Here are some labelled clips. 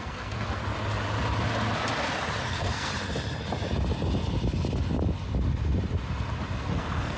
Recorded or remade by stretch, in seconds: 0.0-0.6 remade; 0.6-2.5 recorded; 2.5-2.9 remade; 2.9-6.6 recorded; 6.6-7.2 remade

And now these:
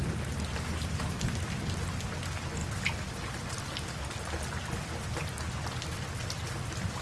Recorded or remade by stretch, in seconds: 0.0-7.0 recorded

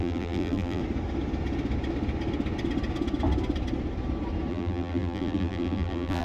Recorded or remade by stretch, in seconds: 0.0-0.8 remade; 0.8-4.5 recorded; 4.5-6.2 remade

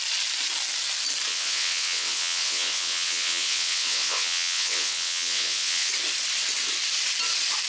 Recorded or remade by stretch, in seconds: 0.0-1.3 recorded; 1.3-5.9 remade; 5.9-7.7 recorded

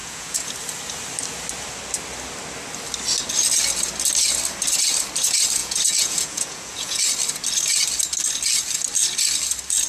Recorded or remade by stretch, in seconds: 0.0-0.5 remade; 0.5-5.6 recorded; 5.6-7.0 remade; 7.0-9.9 recorded